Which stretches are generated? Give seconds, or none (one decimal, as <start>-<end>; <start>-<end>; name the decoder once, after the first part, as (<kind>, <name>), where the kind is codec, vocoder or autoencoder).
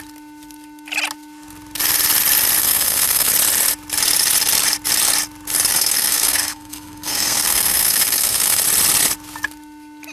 2.6-3.3 (codec, SNAC); 5.7-8.6